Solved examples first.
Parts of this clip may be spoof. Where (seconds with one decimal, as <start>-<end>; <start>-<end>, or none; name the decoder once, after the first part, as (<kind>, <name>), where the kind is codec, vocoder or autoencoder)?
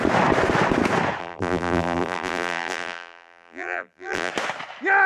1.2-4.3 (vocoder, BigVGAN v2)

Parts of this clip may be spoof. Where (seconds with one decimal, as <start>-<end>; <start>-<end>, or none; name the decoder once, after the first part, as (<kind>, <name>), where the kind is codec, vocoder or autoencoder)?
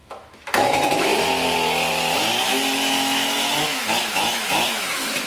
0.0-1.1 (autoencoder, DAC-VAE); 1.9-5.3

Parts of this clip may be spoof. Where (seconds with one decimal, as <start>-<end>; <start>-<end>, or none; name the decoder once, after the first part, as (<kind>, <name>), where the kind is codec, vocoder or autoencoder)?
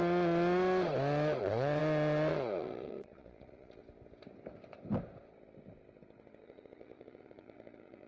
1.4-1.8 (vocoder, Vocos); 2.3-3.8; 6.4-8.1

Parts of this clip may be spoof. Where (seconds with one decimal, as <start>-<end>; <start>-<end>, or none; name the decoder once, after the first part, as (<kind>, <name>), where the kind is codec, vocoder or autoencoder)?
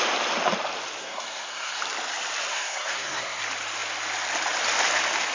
1.0-1.8 (codec, SNAC); 2.5-3.4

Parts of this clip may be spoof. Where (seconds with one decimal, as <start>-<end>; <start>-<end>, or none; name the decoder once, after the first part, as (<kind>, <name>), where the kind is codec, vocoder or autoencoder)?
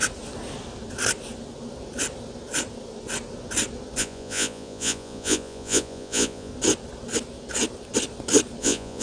4.0-6.5 (vocoder, Vocos); 8.6-9.0